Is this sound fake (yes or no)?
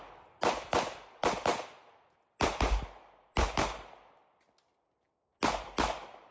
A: no